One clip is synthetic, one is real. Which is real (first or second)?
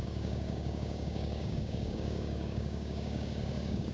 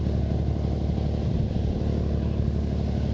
second